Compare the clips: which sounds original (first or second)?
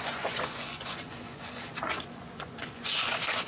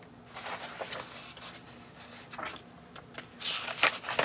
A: second